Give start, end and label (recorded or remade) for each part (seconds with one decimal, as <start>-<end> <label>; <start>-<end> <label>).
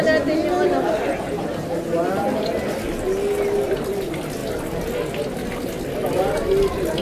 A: 0.0-7.0 recorded